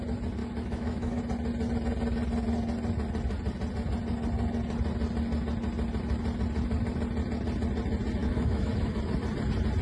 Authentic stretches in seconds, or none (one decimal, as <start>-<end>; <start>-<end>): 0.0-0.4; 1.2-8.2; 9.0-9.8